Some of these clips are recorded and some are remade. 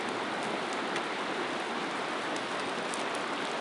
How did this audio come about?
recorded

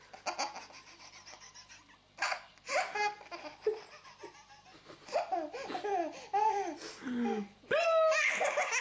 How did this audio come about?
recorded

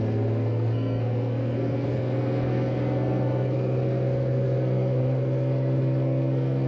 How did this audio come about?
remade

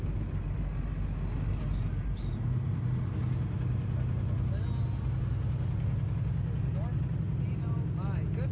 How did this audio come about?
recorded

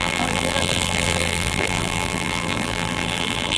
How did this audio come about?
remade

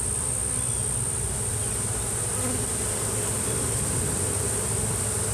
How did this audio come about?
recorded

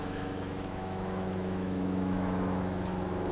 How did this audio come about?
remade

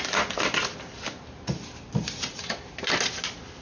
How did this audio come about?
recorded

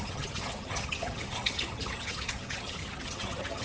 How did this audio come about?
remade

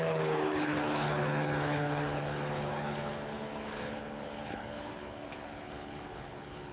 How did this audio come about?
remade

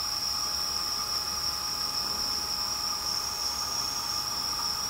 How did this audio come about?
recorded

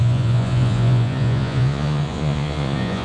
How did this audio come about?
remade